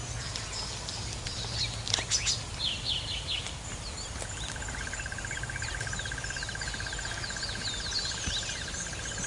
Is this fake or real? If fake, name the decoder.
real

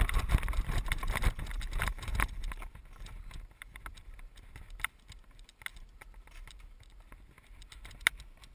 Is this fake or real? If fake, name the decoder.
real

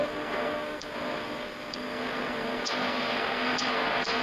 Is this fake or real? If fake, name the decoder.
fake, codec, SNAC